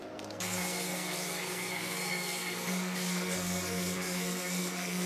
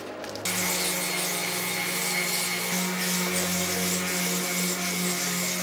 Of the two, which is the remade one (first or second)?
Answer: first